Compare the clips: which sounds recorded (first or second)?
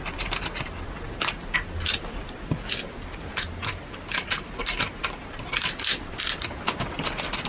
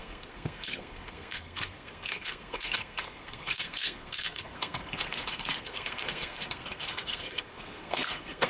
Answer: first